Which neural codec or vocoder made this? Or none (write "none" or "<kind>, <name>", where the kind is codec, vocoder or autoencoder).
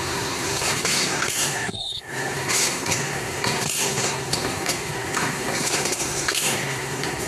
codec, SNAC